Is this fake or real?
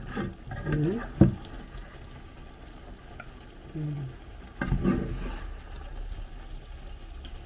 real